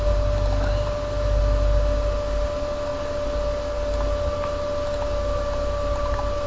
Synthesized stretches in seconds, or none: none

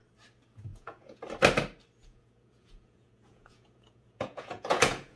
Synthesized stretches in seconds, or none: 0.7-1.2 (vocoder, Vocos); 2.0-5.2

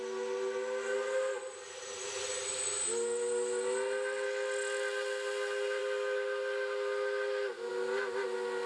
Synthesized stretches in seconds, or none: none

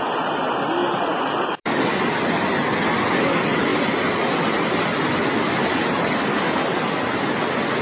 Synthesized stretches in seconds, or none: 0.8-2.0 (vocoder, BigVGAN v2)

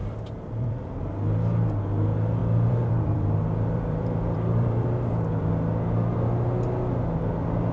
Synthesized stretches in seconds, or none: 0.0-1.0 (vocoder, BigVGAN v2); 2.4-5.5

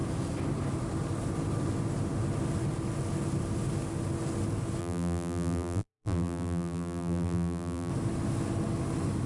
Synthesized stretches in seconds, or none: 4.8-7.9 (vocoder, BigVGAN v2)